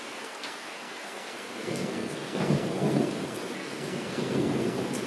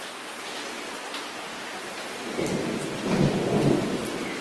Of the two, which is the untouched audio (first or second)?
second